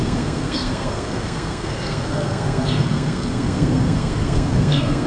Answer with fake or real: fake